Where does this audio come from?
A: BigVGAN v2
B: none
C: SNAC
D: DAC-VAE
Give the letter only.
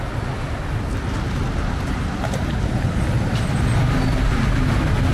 B